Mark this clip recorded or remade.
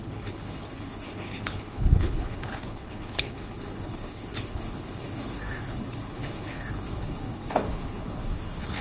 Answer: remade